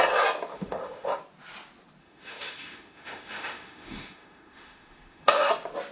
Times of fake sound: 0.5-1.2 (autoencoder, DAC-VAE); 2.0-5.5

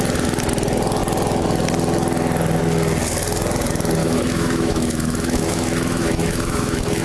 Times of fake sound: 4.0-7.0 (autoencoder, DAC-VAE)

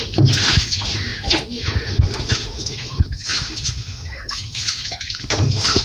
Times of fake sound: 0.0-5.8 (autoencoder, DAC-VAE)

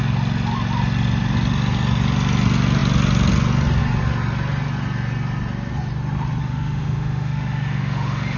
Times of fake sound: 6.4-8.4 (autoencoder, DAC-VAE)

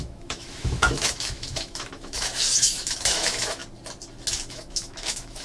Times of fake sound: 0.0-3.6 (autoencoder, DAC-VAE); 4.5-5.4

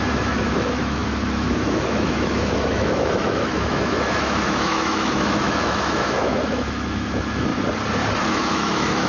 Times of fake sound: 0.0-7.5 (autoencoder, DAC-VAE); 8.3-9.1